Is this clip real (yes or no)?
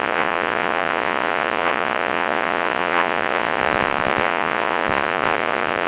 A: no